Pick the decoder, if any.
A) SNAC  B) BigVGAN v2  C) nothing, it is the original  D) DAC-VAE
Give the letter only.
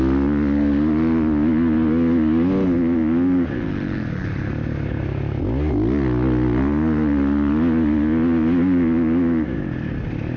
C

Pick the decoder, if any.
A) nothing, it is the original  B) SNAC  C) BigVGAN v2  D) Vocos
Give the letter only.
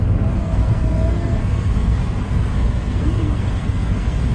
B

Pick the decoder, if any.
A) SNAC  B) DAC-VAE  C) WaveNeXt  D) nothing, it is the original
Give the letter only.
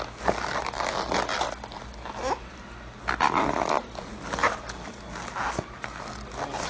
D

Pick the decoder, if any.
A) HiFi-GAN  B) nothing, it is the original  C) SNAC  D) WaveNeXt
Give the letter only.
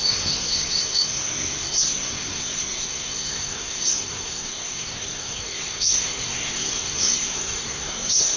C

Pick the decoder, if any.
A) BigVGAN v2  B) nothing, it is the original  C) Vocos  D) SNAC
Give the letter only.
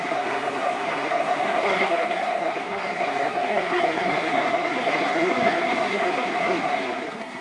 D